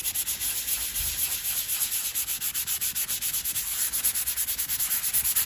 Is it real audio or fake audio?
real